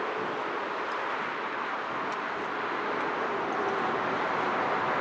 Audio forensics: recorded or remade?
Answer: recorded